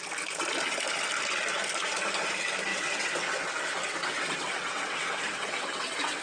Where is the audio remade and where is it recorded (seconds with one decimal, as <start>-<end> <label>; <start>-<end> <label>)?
0.0-2.7 recorded; 2.7-3.4 remade; 3.4-4.0 recorded; 4.0-6.2 remade